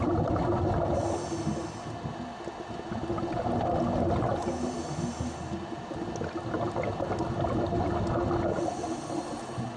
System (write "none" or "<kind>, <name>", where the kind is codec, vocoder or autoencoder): none